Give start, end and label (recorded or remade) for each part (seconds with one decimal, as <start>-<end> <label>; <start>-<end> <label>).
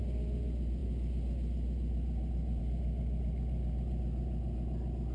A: 0.0-5.1 recorded